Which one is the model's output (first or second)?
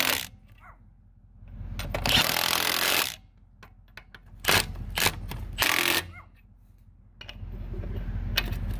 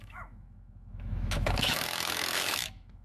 second